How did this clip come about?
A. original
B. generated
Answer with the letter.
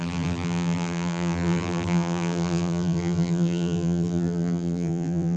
B